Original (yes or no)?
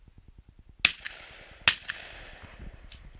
yes